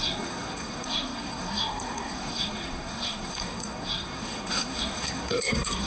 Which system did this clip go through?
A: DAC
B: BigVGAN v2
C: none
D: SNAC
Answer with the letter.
D